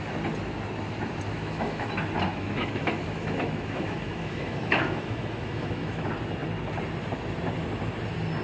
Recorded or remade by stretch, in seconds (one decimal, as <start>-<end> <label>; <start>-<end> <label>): 0.0-1.3 recorded; 1.3-1.9 remade; 1.9-2.3 recorded; 2.3-6.0 remade; 6.0-8.4 recorded